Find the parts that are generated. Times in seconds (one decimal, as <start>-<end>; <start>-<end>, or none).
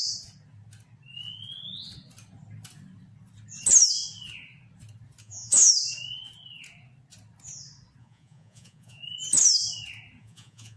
5.2-5.7; 8.0-9.0; 10.2-10.8